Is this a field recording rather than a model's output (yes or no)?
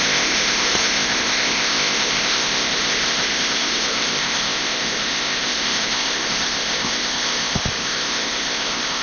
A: no